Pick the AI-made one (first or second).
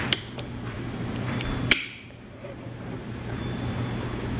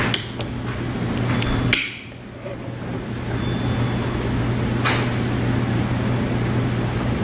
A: first